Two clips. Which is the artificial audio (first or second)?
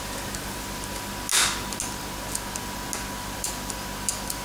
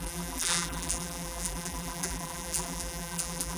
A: second